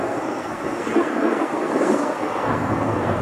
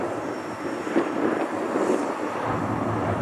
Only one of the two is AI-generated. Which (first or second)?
first